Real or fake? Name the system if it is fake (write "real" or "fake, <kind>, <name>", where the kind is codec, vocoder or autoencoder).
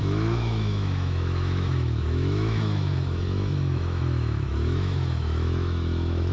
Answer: fake, autoencoder, DAC-VAE